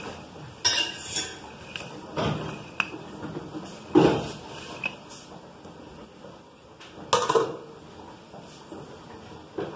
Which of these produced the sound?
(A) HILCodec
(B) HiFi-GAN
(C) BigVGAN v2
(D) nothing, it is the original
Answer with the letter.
D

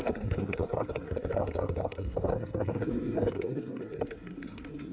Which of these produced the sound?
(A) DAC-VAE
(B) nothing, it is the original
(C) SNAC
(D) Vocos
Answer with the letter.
C